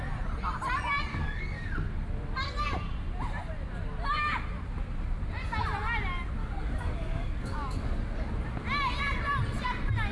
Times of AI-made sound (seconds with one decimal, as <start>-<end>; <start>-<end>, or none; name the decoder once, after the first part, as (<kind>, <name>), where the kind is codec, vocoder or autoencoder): 1.1-1.7 (codec, DAC); 6.4-8.0